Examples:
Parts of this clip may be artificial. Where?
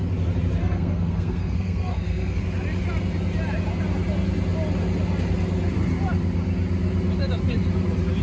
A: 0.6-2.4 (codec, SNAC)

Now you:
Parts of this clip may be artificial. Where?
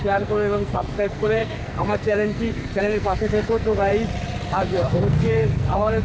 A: 0.0-3.9 (codec, SNAC); 4.5-6.0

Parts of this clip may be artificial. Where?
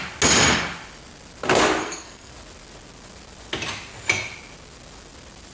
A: 1.8-2.3 (codec, SNAC)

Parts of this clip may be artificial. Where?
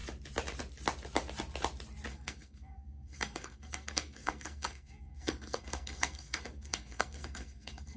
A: 2.1-8.0 (codec, SNAC)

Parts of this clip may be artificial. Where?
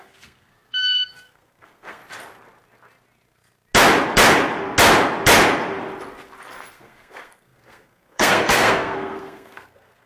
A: 0.0-2.0 (codec, SNAC); 6.7-10.1